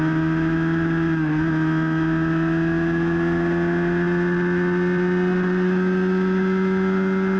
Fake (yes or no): no